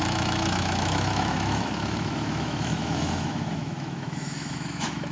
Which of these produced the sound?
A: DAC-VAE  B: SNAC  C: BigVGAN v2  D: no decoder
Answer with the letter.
A